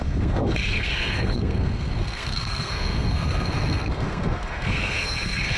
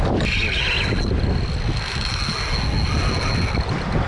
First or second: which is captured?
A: second